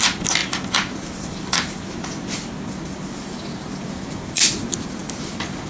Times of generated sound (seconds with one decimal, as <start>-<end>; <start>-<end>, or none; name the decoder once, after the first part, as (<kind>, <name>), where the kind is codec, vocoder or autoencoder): none